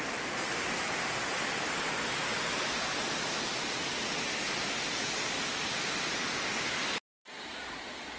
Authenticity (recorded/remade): recorded